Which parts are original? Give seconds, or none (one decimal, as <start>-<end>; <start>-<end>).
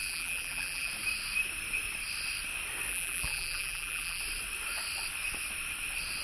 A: 0.9-2.9; 4.2-6.2